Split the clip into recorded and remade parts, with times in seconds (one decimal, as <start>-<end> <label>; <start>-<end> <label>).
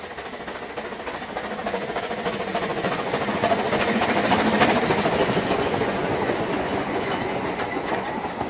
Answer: 0.0-1.6 recorded; 1.6-4.0 remade; 4.0-5.2 recorded; 5.2-8.5 remade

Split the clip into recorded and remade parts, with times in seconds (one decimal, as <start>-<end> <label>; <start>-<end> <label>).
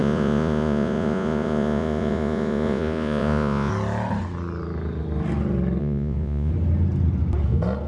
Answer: 0.0-3.7 remade; 3.7-5.8 recorded; 5.8-6.5 remade; 6.5-7.9 recorded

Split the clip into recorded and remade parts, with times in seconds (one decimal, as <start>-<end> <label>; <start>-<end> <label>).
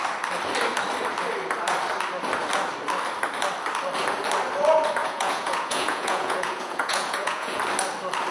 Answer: 0.0-5.0 recorded; 5.0-7.6 remade; 7.6-8.3 recorded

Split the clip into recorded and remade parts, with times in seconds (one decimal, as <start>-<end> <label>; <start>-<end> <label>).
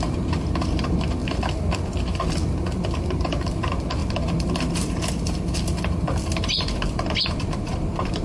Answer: 0.0-4.0 remade; 4.0-5.1 recorded; 5.1-8.2 remade